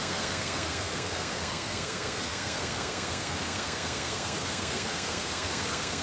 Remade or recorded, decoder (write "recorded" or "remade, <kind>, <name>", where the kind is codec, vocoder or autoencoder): remade, codec, SNAC